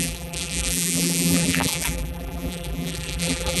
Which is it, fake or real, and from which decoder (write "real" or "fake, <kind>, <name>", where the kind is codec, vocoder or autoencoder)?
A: fake, vocoder, BigVGAN v2